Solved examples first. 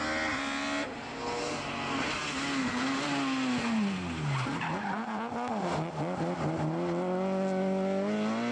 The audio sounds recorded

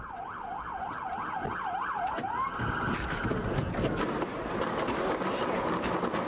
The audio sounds recorded